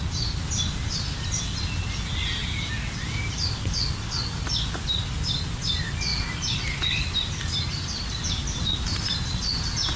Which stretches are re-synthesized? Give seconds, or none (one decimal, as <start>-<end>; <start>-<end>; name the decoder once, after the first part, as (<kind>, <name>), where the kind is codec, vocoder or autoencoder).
none